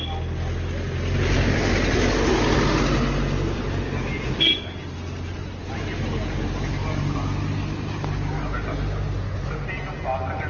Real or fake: real